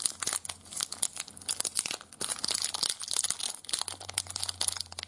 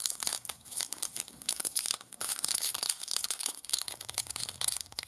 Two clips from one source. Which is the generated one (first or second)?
second